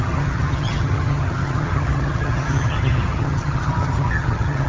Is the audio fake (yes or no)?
yes